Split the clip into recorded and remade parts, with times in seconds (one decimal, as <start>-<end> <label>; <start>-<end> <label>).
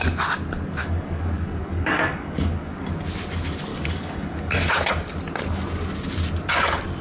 0.0-0.8 recorded; 0.8-2.9 remade; 2.9-3.7 recorded; 3.7-4.7 remade; 4.7-7.0 recorded